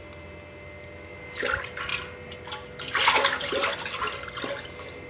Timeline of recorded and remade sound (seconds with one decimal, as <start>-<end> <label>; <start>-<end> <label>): 0.0-5.1 recorded